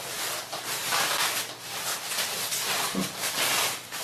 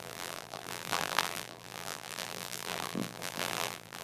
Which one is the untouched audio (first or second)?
first